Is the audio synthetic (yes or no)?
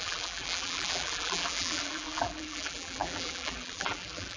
yes